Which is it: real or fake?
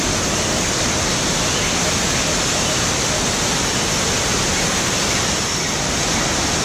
real